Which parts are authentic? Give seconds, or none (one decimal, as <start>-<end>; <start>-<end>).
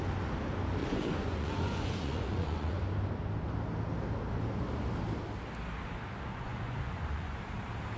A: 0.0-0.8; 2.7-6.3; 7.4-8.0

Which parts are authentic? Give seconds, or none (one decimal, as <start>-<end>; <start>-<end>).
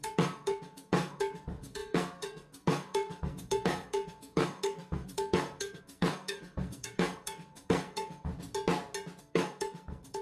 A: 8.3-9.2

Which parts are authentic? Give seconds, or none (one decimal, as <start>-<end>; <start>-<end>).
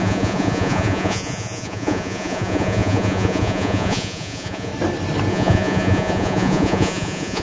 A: 4.7-5.3